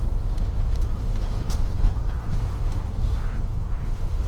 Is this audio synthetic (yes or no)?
yes